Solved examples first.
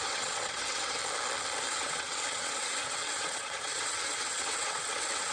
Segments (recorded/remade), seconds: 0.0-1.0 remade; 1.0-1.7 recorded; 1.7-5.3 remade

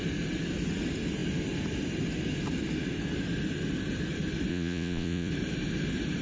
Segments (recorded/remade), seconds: 0.0-4.5 recorded; 4.5-5.3 remade; 5.3-6.2 recorded